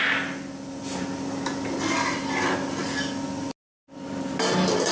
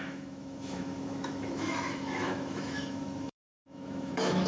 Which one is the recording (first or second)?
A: first